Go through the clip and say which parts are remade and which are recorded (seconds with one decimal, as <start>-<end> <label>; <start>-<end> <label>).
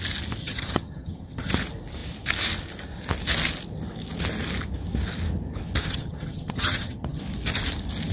0.0-0.4 recorded; 0.4-1.5 remade; 1.5-5.8 recorded; 5.8-7.2 remade; 7.2-8.1 recorded